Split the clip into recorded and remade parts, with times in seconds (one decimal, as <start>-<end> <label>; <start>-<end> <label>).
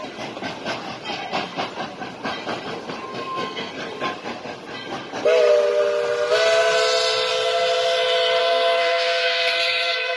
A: 0.0-3.1 recorded; 3.1-3.7 remade; 3.7-8.4 recorded; 8.4-10.2 remade